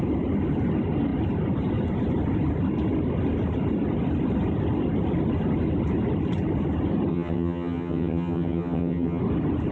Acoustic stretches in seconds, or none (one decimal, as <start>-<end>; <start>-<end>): 0.0-7.1; 9.2-9.7